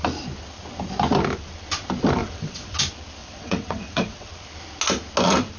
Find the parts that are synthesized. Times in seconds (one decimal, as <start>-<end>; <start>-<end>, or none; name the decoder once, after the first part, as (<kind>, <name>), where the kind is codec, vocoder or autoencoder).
2.2-2.8 (vocoder, WaveNeXt); 3.2-4.3

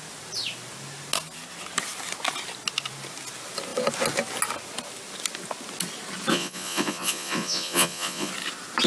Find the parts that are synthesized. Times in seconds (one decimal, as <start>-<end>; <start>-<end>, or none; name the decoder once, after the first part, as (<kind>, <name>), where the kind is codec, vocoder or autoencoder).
6.3-8.3 (vocoder, Vocos)

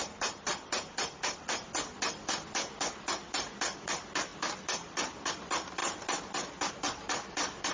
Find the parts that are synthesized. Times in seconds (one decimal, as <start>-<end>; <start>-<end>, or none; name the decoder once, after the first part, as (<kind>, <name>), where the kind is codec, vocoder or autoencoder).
none

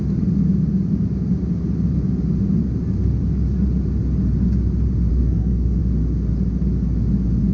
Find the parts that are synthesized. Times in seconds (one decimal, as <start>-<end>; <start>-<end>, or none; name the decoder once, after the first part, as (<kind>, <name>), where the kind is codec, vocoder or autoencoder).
5.1-5.8 (codec, SNAC)

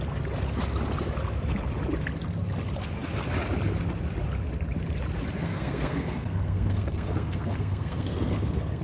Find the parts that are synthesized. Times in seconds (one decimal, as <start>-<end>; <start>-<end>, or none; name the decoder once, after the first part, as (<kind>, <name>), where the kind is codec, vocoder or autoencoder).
5.4-8.8 (codec, SNAC)

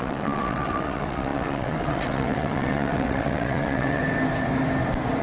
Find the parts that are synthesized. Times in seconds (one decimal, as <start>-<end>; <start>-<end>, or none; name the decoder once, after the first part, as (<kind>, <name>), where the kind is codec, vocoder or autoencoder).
0.0-4.0 (vocoder, WaveNeXt)

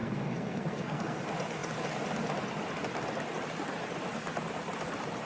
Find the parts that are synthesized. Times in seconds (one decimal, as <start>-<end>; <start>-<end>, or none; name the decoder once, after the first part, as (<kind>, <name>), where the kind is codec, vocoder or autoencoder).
0.0-1.2 (codec, SNAC)

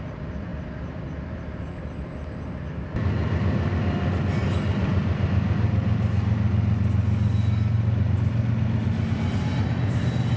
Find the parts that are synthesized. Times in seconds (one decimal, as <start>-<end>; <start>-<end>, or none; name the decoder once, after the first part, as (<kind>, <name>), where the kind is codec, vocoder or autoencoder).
none